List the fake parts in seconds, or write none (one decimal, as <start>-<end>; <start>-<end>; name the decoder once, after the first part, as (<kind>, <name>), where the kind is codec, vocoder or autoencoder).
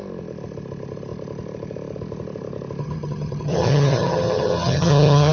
2.8-5.3 (vocoder, HiFi-GAN)